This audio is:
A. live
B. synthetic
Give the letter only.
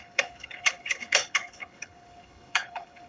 B